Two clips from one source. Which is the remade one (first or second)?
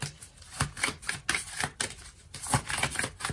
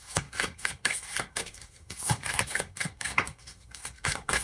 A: second